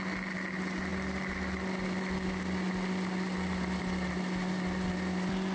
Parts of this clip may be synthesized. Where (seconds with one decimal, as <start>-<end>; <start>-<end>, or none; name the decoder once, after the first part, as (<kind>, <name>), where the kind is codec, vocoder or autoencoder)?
none